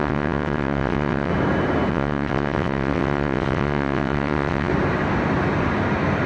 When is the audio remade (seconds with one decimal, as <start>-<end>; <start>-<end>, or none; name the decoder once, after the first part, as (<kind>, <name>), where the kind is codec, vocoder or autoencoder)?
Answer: 0.0-1.3 (vocoder, WaveNeXt); 1.9-4.7